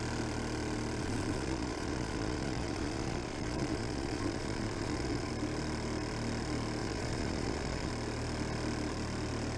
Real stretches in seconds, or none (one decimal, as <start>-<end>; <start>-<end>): 0.0-1.0; 5.3-6.8; 7.9-9.6